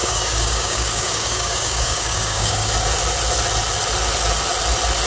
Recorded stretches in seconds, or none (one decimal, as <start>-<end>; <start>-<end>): 2.7-5.1